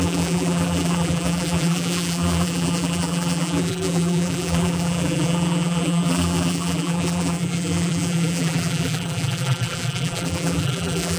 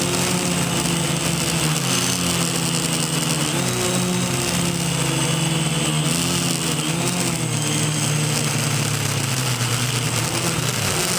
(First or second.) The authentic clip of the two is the second